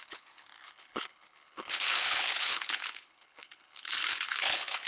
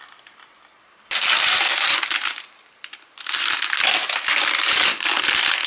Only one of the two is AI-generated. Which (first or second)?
first